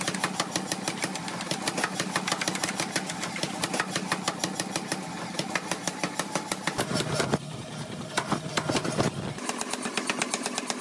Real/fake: real